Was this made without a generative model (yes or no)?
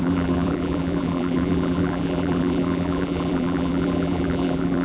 no